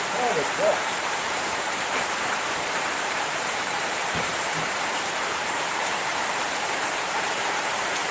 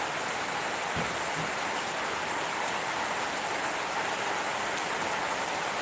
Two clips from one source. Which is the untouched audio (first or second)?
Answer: second